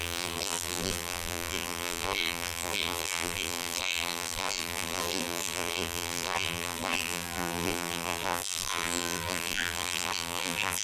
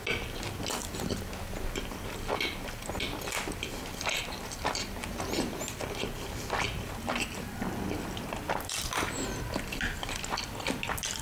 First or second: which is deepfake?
first